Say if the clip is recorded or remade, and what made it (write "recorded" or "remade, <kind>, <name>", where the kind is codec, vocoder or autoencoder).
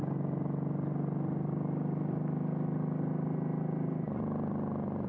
recorded